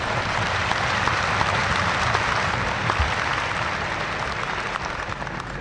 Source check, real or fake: real